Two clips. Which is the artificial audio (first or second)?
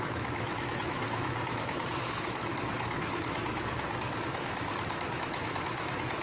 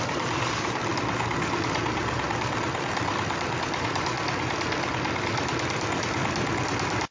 first